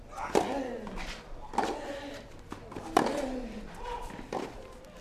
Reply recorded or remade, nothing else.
recorded